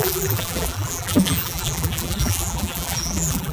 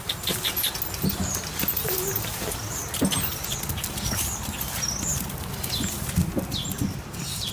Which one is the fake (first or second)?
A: first